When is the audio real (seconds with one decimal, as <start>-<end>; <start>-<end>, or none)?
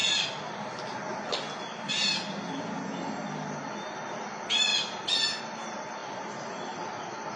0.0-7.4